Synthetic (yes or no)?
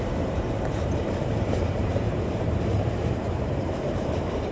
yes